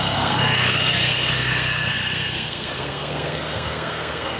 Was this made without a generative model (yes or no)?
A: no